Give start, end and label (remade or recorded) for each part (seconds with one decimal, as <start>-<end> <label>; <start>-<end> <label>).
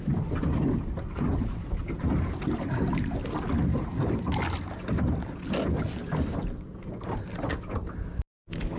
0.0-8.8 recorded